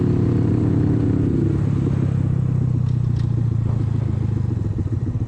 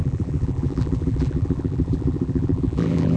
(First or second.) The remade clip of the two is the second